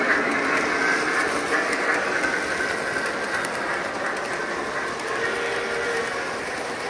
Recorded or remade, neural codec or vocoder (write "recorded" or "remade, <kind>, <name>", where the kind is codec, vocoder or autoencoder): recorded